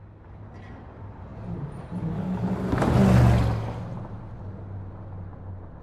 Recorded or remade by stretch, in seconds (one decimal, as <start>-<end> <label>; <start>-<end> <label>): 0.0-5.8 recorded